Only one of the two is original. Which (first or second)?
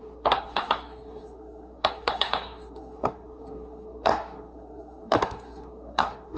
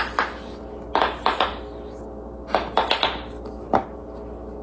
second